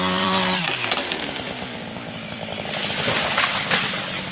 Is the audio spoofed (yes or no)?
yes